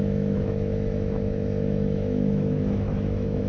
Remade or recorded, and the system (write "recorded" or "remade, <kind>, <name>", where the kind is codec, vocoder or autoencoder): remade, autoencoder, DAC-VAE